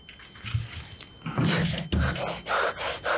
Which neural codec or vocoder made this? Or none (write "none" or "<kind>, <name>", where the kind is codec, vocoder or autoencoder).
none